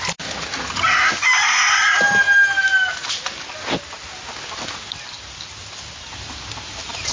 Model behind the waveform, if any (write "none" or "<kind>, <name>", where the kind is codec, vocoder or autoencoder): none